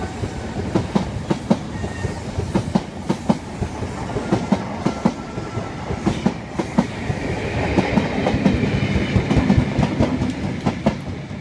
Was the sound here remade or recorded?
recorded